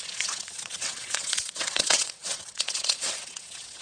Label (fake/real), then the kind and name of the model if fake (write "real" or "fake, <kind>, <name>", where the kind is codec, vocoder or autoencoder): fake, vocoder, WaveNeXt